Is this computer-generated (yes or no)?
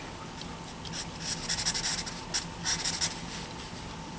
no